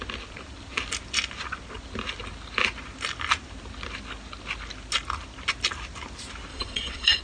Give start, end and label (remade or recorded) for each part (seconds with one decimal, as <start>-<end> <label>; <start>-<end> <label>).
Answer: 0.0-6.5 recorded; 6.5-7.2 remade